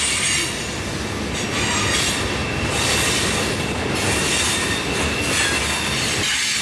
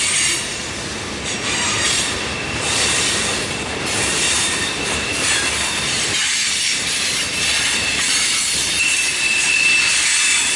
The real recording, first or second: first